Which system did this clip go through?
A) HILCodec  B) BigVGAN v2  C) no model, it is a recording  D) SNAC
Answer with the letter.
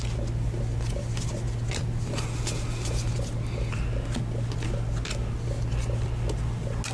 C